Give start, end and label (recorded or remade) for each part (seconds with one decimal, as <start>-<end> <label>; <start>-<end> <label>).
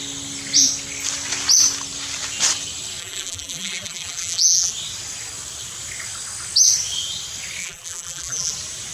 0.0-3.0 recorded; 3.0-4.7 remade; 4.7-7.6 recorded; 7.6-8.5 remade; 8.5-8.9 recorded